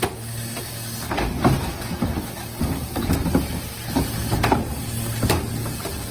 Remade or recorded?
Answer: recorded